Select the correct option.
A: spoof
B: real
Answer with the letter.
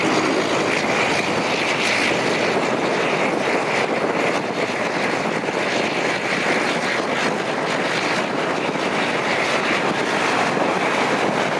B